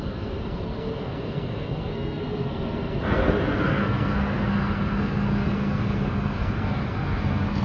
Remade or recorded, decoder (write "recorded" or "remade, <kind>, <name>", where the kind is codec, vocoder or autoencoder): remade, codec, SNAC